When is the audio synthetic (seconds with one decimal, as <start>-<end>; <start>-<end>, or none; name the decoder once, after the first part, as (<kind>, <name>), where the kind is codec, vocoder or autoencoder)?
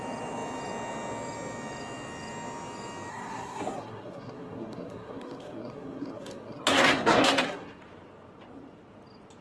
3.1-7.8 (codec, SNAC)